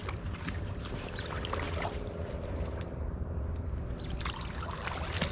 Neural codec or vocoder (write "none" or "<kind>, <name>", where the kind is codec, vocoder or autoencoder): none